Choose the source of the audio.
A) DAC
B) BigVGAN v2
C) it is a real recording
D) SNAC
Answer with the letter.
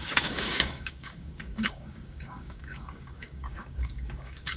A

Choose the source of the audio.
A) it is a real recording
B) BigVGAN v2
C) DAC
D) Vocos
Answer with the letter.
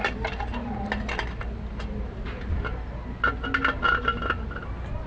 A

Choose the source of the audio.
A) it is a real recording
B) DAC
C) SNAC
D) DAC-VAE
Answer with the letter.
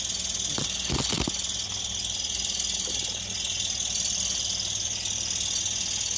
A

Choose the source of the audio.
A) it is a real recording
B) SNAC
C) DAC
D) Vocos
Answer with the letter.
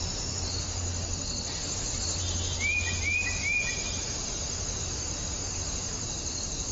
A